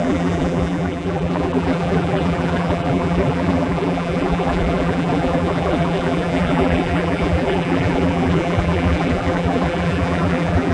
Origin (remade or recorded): remade